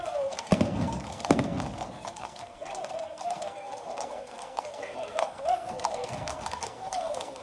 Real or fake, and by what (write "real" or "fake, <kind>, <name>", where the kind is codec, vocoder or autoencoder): fake, codec, SNAC